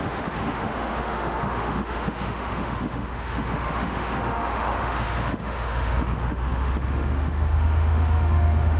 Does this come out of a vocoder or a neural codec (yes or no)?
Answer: yes